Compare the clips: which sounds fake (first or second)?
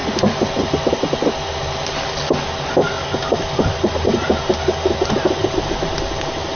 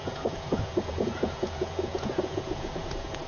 second